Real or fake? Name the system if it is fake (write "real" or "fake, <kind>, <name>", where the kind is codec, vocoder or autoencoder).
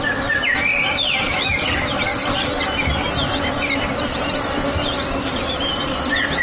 real